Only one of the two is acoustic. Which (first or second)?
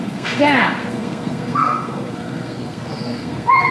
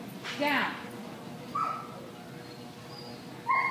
second